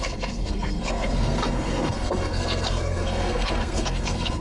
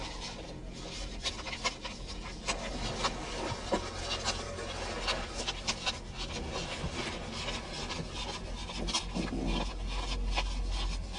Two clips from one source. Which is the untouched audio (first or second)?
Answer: second